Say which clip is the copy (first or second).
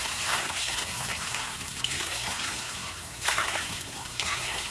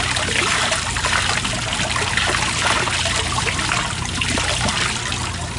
first